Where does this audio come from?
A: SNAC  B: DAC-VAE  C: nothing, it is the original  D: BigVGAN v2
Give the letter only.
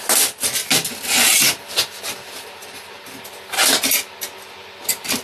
C